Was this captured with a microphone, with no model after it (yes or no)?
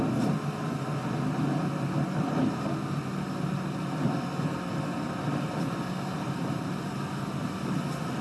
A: yes